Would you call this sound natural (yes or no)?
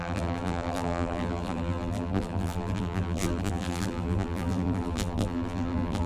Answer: no